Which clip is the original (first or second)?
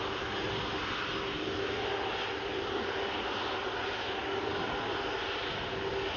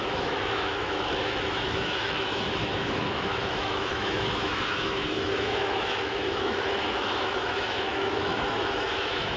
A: first